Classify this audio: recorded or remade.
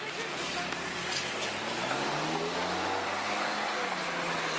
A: recorded